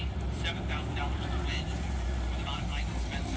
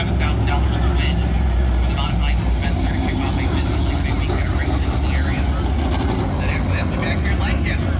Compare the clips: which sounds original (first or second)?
second